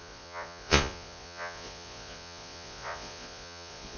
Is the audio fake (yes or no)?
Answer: yes